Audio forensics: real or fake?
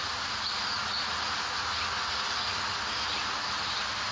real